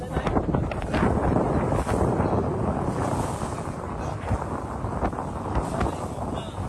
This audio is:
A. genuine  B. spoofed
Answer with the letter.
A